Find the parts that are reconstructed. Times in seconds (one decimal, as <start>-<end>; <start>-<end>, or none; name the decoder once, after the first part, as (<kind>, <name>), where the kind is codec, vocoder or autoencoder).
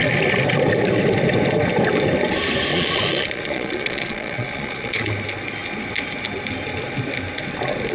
2.7-5.1 (vocoder, Vocos)